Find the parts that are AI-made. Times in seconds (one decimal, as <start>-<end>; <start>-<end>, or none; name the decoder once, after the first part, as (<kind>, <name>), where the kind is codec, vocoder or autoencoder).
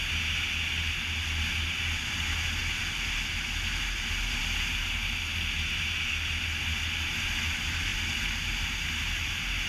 none